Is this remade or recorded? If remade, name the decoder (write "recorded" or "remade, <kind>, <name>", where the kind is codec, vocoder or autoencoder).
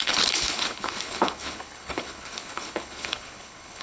remade, codec, HILCodec